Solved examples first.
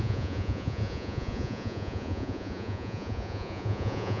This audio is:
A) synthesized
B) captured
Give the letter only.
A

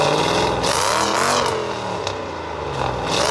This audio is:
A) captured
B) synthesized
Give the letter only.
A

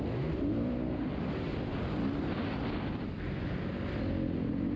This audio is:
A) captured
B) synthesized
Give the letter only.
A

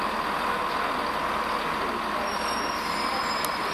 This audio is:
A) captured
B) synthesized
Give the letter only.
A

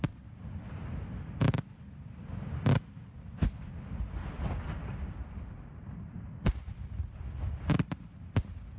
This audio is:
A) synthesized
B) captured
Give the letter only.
B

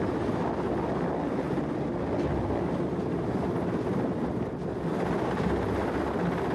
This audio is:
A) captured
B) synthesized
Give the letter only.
A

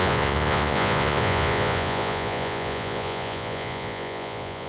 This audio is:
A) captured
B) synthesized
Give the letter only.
B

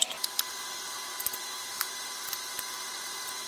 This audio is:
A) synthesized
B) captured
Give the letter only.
B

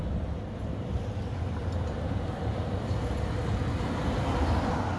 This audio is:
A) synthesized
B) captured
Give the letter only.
B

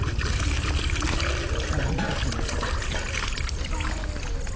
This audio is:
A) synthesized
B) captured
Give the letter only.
B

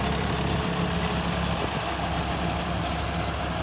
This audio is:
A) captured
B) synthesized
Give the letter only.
A